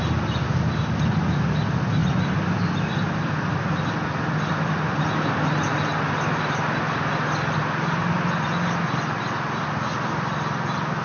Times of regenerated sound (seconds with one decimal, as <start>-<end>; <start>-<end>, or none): none